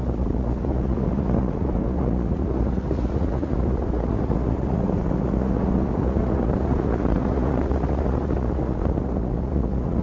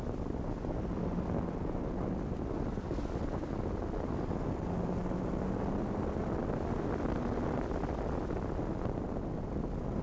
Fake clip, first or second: first